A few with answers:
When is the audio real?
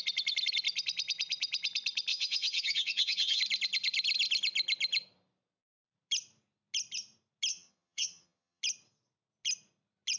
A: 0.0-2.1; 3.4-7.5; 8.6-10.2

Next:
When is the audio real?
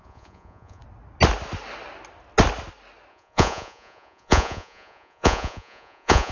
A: 0.8-3.1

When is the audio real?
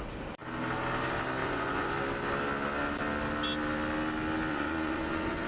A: 0.0-1.4; 1.9-4.5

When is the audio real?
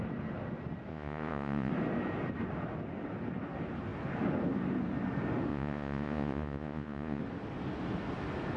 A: 0.0-0.9; 1.7-5.5; 7.2-8.6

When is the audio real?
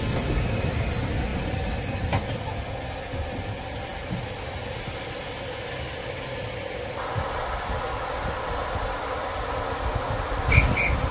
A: 0.0-11.1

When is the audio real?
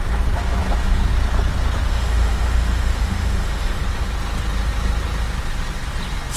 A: 0.0-1.9; 3.8-6.4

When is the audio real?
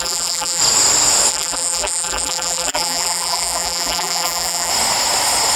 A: 0.6-1.3; 4.7-5.6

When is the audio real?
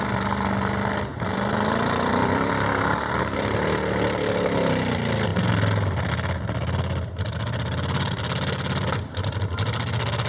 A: 0.0-1.1; 2.5-10.3